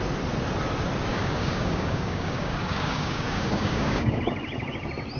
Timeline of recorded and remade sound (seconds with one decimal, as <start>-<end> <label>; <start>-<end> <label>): 0.0-1.1 recorded; 1.1-4.2 remade; 4.2-5.2 recorded